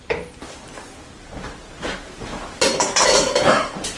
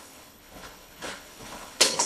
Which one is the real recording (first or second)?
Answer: first